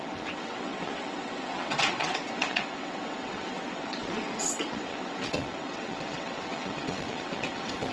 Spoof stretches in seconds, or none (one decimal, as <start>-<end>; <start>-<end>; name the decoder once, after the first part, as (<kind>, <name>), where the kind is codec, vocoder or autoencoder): 0.0-7.9 (vocoder, WaveNeXt)